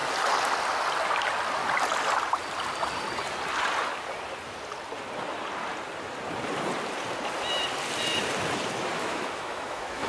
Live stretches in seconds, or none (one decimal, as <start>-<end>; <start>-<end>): 0.0-9.0